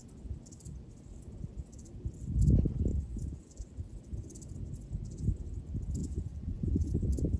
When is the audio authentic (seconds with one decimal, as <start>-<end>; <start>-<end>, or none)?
0.0-2.9; 3.6-6.0; 6.9-7.4